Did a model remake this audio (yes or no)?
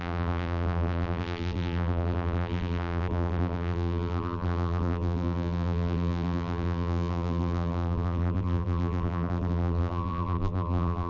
yes